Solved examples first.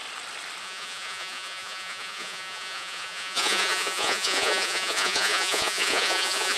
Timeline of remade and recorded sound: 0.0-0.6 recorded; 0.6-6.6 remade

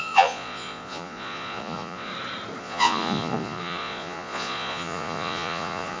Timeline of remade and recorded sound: 0.0-2.1 remade; 2.1-2.6 recorded; 2.6-6.0 remade

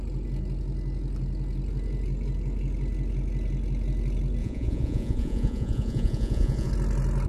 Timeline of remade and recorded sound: 0.0-4.4 recorded; 4.4-6.7 remade; 6.7-7.3 recorded

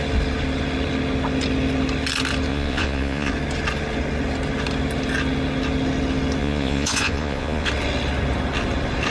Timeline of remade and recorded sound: 0.0-2.5 recorded; 2.5-3.3 remade; 3.3-6.4 recorded; 6.4-7.7 remade; 7.7-9.1 recorded

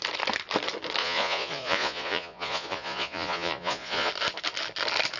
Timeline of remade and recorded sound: 0.0-1.0 recorded; 1.0-4.1 remade; 4.1-5.2 recorded

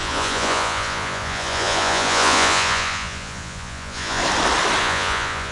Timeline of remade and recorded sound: 0.0-4.2 remade; 4.2-4.8 recorded; 4.8-5.5 remade

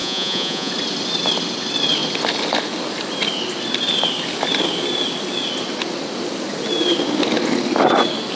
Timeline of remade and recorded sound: 0.0-0.7 remade; 0.7-8.4 recorded